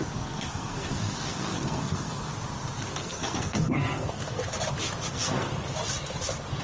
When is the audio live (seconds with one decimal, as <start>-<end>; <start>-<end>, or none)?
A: 2.3-3.0; 4.4-5.1; 5.5-6.6